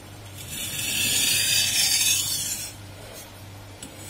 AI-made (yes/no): yes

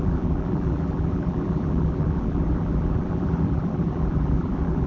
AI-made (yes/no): yes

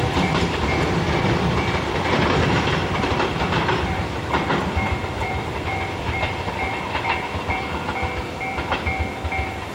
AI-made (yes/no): yes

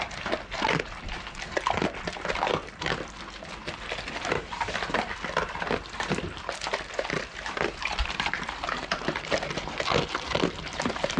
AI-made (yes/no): yes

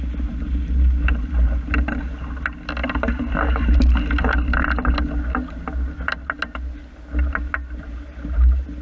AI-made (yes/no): no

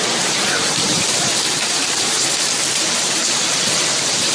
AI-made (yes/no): yes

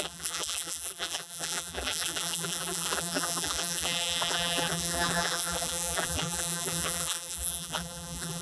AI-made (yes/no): yes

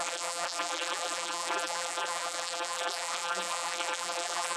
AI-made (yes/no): yes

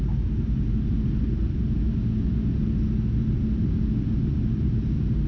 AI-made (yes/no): no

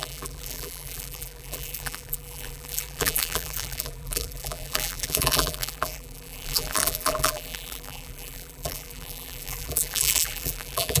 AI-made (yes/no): yes